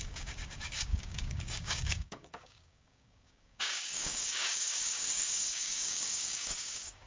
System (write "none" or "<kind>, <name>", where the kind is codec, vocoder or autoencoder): codec, DAC